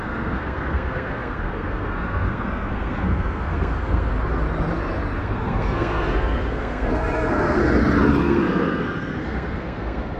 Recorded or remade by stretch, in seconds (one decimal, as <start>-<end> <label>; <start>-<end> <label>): 0.0-4.1 remade; 4.1-5.2 recorded; 5.2-7.6 remade; 7.6-8.2 recorded; 8.2-10.2 remade